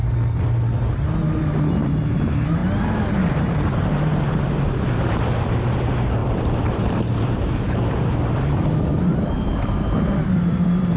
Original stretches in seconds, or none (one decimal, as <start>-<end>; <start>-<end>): 0.0-1.7; 2.6-3.1